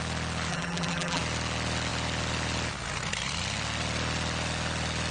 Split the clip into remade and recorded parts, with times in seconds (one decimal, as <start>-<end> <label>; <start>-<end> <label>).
0.0-0.5 recorded; 0.5-1.2 remade; 1.2-5.1 recorded